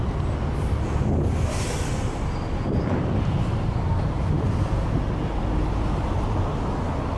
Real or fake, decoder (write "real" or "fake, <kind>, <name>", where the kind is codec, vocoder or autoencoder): real